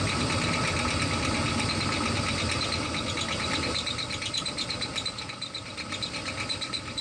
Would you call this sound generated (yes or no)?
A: no